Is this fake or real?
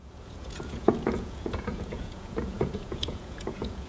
fake